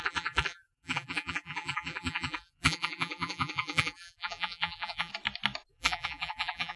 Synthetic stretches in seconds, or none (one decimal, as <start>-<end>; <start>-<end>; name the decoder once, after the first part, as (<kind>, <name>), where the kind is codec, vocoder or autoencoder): 0.0-5.1 (vocoder, BigVGAN v2); 5.7-6.8